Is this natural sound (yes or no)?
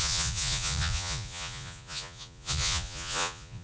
no